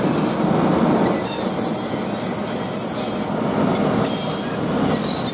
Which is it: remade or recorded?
recorded